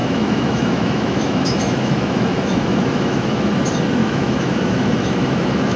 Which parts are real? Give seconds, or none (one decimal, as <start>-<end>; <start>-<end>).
3.5-4.0